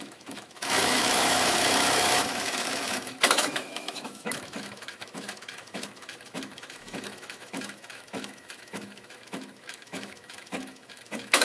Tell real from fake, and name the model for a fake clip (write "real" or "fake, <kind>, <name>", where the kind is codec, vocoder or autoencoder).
fake, autoencoder, DAC-VAE